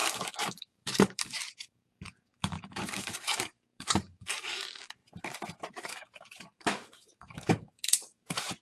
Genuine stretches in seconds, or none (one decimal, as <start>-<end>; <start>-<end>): 5.0-5.7